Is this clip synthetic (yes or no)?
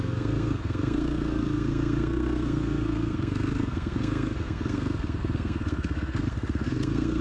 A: yes